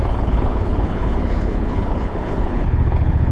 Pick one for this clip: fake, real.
fake